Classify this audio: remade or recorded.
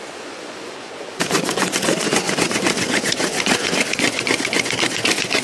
remade